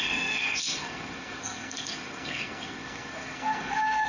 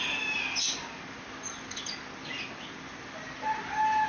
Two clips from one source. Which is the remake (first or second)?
first